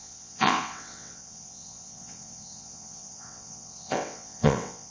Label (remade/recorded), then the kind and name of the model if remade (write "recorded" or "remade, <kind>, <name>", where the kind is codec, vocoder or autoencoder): remade, vocoder, WaveNeXt